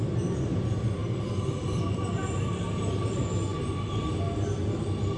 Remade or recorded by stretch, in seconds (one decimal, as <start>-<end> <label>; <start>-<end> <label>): 0.0-5.2 recorded